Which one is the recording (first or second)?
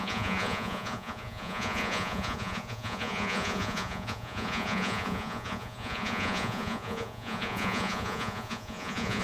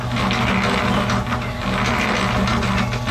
second